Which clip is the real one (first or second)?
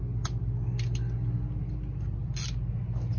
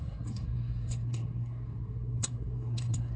first